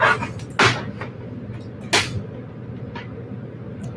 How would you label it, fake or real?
real